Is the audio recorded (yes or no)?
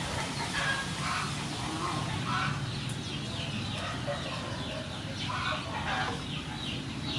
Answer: yes